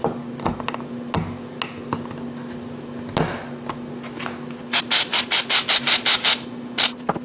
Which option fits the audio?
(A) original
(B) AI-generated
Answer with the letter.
A